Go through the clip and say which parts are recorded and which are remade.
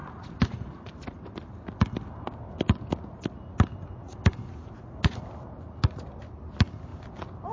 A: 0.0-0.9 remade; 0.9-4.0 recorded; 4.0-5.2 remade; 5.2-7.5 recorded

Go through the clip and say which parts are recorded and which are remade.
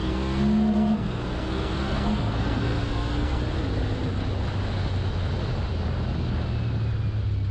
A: 0.0-3.4 remade; 3.4-7.5 recorded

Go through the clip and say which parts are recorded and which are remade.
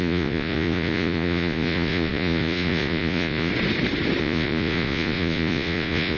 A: 0.0-3.5 remade; 3.5-4.2 recorded; 4.2-6.2 remade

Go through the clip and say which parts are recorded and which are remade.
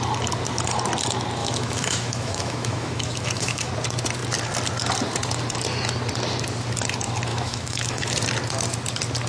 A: 0.0-1.4 recorded; 1.4-3.7 remade; 3.7-7.3 recorded; 7.3-8.1 remade; 8.1-9.3 recorded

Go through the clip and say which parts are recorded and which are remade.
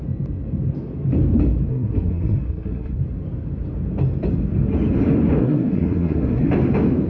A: 0.0-1.7 recorded; 1.7-3.0 remade; 3.0-5.4 recorded; 5.4-6.5 remade; 6.5-7.1 recorded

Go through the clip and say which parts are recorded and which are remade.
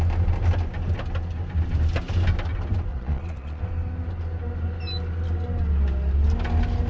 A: 0.0-2.9 recorded; 2.9-3.6 remade; 3.6-6.9 recorded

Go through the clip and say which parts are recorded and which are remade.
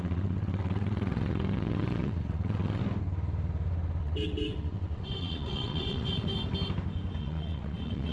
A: 0.0-2.8 remade; 2.8-4.0 recorded; 4.0-6.3 remade; 6.3-7.2 recorded; 7.2-8.1 remade